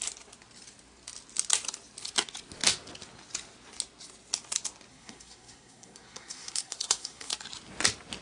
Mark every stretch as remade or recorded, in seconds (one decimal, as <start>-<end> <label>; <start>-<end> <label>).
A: 0.0-4.9 recorded; 4.9-7.3 remade; 7.3-8.2 recorded